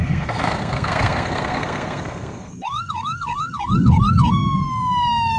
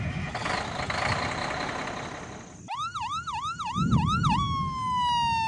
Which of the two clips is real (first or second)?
second